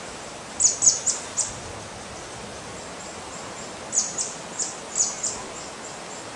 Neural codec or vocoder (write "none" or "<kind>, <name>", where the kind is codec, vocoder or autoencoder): none